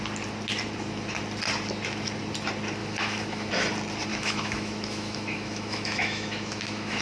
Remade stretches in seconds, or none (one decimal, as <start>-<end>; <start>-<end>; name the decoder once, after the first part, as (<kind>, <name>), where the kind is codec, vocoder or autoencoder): 2.8-3.5 (autoencoder, DAC-VAE); 4.1-7.0